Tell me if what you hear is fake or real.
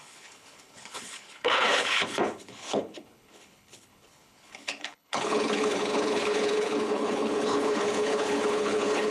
fake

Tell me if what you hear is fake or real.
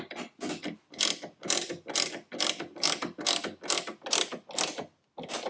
real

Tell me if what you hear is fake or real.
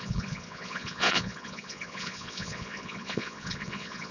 fake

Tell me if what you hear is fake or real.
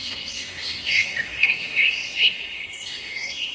fake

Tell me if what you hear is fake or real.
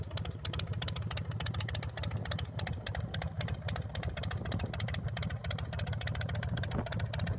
real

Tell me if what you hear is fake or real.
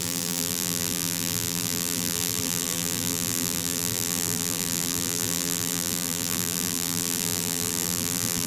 fake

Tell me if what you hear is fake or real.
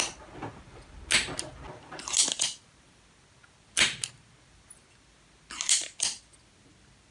real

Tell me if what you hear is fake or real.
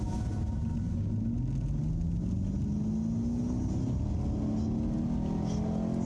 real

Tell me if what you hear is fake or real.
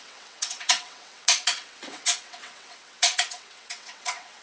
fake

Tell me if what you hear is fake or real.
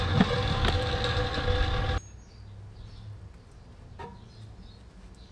real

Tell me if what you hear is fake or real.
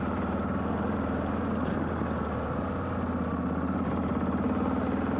real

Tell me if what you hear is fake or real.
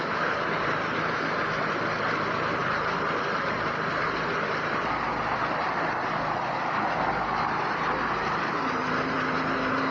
real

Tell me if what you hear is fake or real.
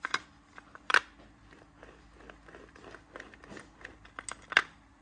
real